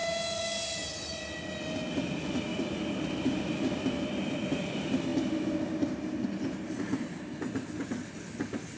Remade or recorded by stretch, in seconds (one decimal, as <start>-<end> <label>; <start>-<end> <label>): 0.0-2.5 recorded; 2.5-3.4 remade; 3.4-8.8 recorded